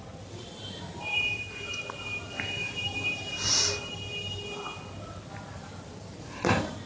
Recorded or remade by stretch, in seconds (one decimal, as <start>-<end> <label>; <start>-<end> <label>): 0.0-0.5 recorded; 0.5-1.2 remade; 1.2-2.6 recorded; 2.6-3.6 remade; 3.6-6.9 recorded